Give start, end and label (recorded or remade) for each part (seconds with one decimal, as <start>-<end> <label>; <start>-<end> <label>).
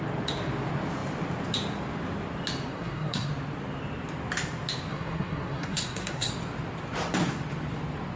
0.0-2.7 recorded; 2.7-3.3 remade; 3.3-4.9 recorded; 4.9-6.3 remade; 6.3-8.2 recorded